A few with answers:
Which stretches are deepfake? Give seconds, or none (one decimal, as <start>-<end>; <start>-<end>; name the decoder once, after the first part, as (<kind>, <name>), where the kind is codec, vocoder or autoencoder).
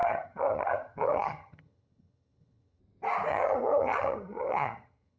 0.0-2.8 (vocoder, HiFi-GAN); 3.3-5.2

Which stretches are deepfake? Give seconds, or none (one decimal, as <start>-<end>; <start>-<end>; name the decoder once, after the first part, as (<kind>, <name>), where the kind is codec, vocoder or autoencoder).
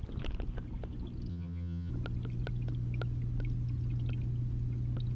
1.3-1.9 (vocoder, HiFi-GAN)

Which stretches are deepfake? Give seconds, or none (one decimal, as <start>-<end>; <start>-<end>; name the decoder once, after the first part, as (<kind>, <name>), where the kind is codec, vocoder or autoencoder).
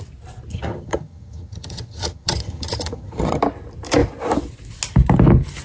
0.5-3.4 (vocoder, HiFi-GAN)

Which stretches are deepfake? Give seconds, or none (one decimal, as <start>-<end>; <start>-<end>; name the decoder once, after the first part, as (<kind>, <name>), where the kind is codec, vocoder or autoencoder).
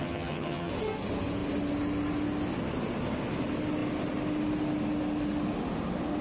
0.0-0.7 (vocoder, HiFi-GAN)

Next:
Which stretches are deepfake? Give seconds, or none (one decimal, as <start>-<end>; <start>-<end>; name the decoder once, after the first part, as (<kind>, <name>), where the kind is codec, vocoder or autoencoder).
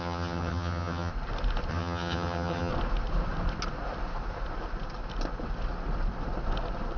0.0-1.1 (vocoder, HiFi-GAN); 1.7-2.7